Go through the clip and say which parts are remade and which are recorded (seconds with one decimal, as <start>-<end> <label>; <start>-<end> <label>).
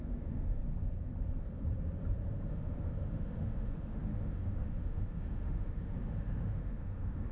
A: 0.0-0.6 remade; 0.6-2.5 recorded; 2.5-7.3 remade